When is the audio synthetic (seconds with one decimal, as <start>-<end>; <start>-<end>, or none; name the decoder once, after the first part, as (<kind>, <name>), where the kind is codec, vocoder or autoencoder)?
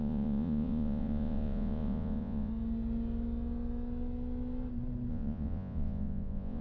0.0-2.5 (vocoder, Vocos); 5.1-6.6